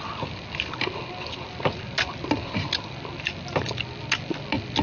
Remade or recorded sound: recorded